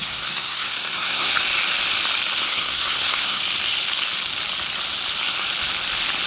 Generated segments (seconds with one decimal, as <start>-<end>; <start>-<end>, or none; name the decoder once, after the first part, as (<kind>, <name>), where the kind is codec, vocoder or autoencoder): 0.0-1.3 (codec, SNAC); 2.4-3.4